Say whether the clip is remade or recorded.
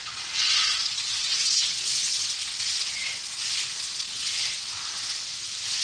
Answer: remade